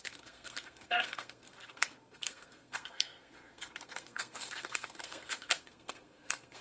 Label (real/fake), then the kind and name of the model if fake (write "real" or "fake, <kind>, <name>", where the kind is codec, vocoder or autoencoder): fake, codec, SNAC